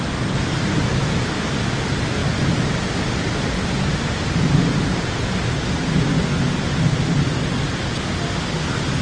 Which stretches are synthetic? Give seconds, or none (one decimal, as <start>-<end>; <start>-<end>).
none